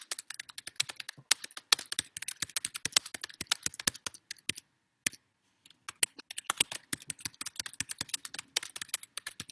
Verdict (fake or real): real